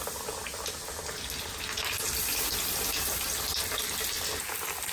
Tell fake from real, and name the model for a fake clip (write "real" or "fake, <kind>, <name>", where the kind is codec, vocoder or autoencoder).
real